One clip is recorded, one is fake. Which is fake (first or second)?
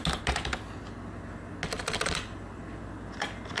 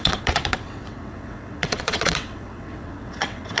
second